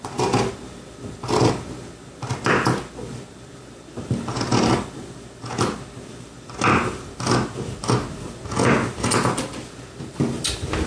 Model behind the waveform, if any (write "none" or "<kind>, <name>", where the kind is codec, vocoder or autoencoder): none